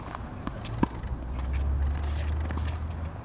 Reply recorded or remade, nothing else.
recorded